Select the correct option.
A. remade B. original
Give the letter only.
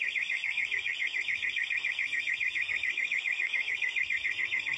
A